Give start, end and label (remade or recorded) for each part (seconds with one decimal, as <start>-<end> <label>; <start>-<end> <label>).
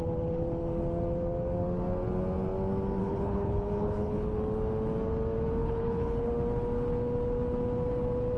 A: 0.0-3.0 recorded; 3.0-4.4 remade; 4.4-5.6 recorded; 5.6-6.3 remade; 6.3-8.4 recorded